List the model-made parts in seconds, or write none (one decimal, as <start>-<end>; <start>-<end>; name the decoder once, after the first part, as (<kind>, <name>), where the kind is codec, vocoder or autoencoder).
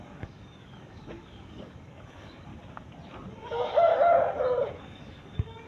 0.0-2.5 (codec, DAC); 3.3-3.9; 4.8-5.7